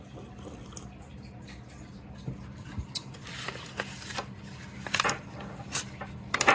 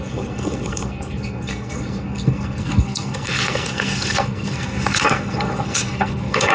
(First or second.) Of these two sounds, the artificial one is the second